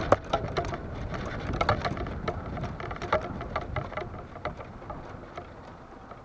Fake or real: real